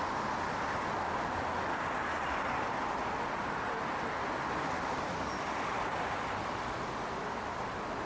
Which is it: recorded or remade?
recorded